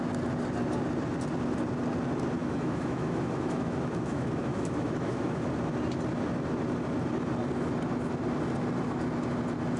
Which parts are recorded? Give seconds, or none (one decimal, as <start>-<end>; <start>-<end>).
0.0-2.4; 5.4-9.8